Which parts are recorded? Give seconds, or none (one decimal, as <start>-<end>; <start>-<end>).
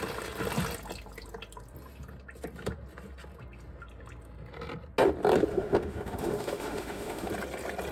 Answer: 0.0-5.5; 7.3-7.9